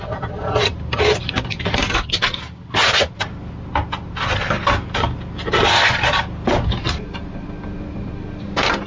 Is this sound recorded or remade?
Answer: recorded